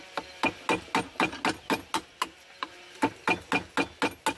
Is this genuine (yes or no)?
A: yes